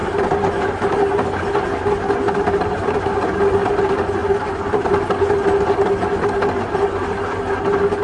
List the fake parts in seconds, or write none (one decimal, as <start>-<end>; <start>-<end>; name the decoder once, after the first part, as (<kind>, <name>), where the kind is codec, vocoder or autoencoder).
0.0-0.5 (vocoder, BigVGAN v2); 4.2-5.0